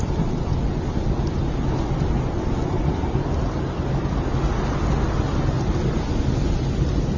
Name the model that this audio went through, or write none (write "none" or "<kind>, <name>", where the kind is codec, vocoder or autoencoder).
none